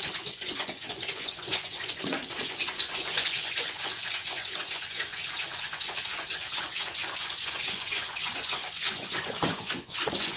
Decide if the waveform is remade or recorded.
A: remade